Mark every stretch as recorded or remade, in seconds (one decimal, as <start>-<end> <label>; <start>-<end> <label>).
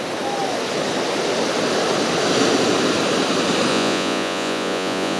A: 0.0-3.7 recorded; 3.7-5.2 remade